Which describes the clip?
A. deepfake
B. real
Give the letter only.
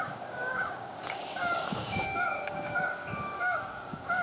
A